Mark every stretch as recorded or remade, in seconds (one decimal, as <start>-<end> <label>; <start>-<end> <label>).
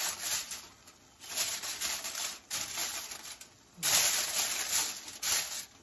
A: 0.0-5.8 recorded